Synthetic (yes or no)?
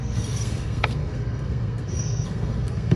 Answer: yes